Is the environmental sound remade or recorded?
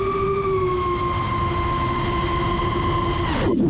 recorded